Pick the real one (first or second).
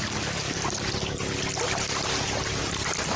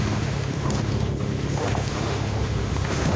first